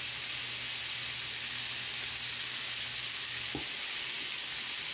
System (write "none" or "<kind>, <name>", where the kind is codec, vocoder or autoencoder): none